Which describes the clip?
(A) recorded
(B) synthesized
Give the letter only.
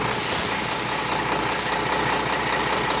A